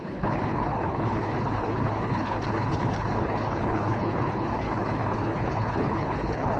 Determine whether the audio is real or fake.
fake